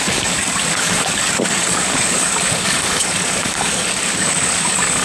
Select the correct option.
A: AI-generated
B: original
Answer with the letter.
A